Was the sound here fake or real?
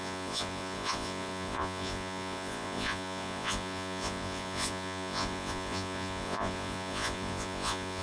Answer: fake